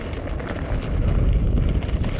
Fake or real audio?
real